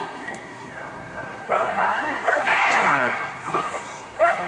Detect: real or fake fake